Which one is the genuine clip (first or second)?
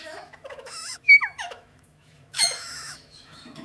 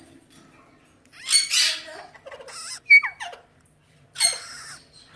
second